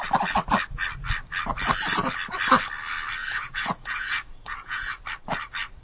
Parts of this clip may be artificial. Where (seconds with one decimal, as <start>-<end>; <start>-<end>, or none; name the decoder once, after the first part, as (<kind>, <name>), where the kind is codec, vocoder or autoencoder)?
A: 3.2-5.0 (vocoder, Vocos)

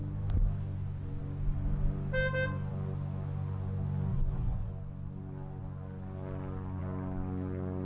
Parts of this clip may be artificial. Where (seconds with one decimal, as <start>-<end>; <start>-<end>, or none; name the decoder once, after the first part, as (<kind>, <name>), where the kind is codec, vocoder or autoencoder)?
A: 4.1-4.7 (vocoder, Vocos)

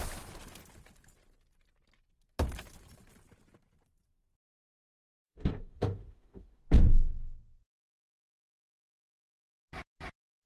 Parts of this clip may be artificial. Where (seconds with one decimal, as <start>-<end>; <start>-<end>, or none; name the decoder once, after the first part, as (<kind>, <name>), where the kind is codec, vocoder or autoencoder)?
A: 5.3-6.6 (autoencoder, DAC-VAE)

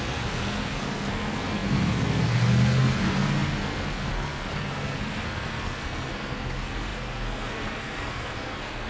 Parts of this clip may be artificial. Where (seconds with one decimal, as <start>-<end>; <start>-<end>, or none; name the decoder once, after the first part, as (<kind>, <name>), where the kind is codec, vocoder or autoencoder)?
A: 0.0-8.9 (codec, SNAC)

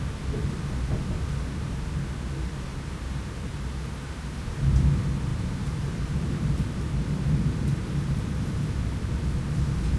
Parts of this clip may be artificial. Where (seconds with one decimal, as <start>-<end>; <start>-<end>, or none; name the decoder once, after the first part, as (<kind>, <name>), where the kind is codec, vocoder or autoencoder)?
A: 2.7-4.1 (vocoder, BigVGAN v2); 5.3-8.7

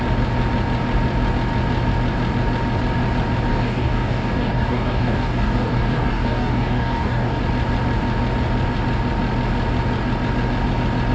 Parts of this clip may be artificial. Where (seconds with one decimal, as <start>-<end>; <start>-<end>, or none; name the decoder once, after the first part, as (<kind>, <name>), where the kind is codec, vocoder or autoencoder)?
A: 3.5-7.4 (codec, DAC)

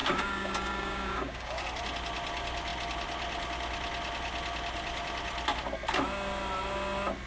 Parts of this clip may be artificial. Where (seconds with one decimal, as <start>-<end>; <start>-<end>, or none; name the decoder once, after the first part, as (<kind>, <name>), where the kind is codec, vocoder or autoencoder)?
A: 0.0-1.5 (codec, DAC)

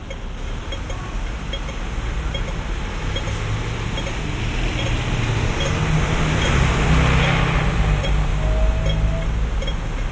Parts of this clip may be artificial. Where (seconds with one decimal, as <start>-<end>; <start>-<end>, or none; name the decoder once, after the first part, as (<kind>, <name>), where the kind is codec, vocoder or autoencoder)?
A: none